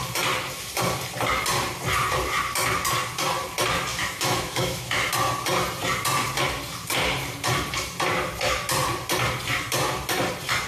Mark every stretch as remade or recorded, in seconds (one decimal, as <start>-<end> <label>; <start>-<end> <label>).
0.0-3.9 recorded; 3.9-5.1 remade; 5.1-10.7 recorded